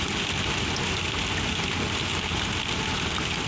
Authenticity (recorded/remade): recorded